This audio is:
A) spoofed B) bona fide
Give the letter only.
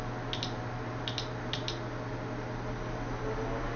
B